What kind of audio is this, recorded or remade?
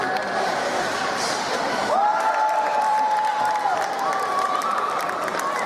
remade